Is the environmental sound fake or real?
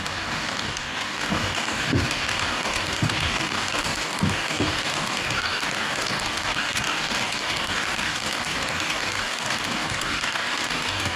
fake